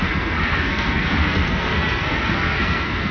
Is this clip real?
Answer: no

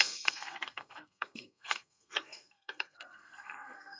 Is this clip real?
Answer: no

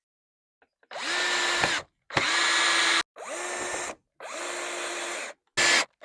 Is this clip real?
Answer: yes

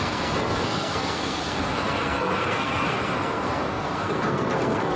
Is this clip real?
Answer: no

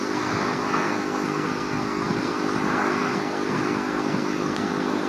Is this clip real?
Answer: no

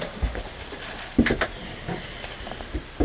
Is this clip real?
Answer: yes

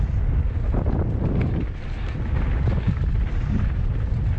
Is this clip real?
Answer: yes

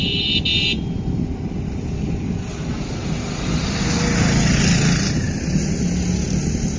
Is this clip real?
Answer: yes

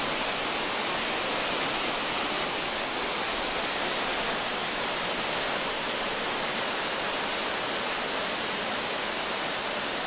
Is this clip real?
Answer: yes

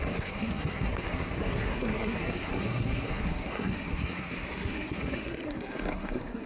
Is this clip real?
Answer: no